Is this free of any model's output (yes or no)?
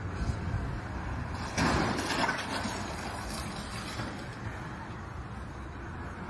yes